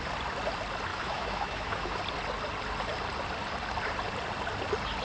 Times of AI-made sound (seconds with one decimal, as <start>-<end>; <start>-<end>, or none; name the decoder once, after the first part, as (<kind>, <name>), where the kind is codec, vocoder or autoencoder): 0.9-2.0 (autoencoder, DAC-VAE)